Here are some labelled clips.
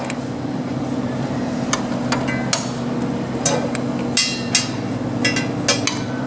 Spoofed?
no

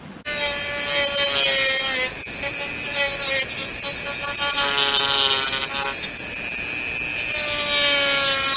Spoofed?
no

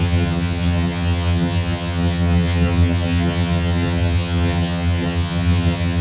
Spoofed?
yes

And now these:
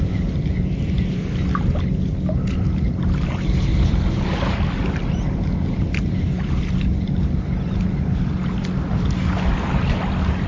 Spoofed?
no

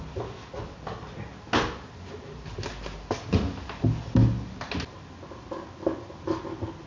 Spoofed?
no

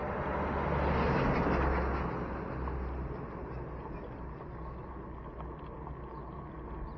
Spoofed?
no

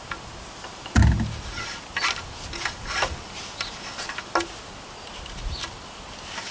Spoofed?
no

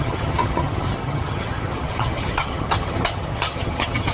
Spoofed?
yes